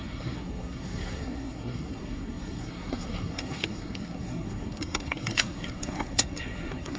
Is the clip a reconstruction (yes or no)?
yes